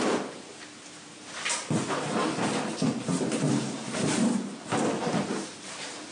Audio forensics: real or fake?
real